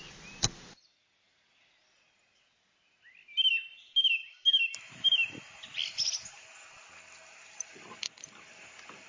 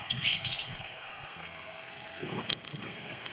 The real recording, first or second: first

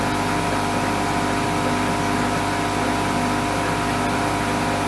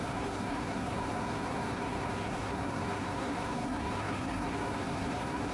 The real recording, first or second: first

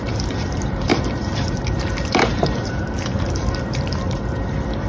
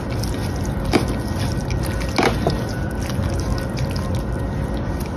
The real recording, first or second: second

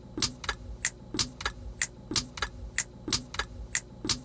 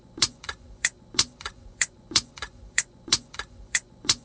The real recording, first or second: first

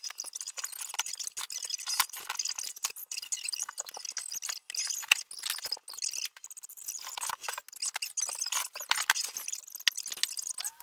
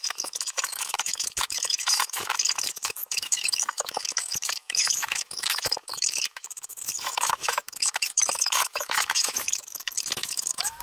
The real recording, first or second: first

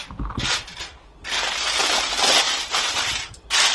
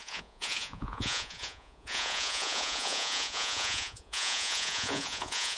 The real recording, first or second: first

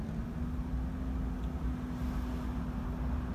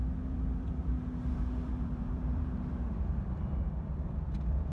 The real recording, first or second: first